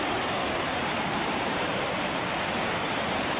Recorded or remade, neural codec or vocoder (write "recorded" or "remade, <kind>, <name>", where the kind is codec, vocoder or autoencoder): remade, vocoder, BigVGAN v2